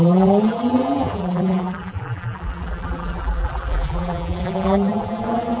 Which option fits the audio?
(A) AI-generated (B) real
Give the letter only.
A